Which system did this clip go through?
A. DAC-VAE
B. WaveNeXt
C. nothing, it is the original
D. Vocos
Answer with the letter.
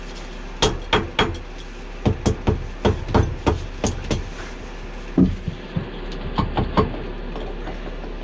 C